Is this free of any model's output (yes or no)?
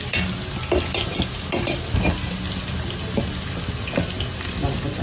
yes